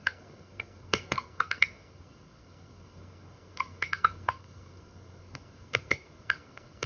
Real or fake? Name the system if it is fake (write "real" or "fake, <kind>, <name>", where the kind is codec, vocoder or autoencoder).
fake, codec, SNAC